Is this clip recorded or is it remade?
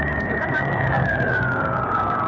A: remade